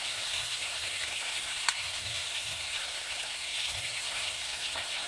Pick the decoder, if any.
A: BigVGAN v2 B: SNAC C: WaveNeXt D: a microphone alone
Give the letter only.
B